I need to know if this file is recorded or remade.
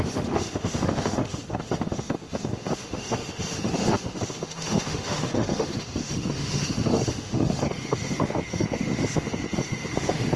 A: remade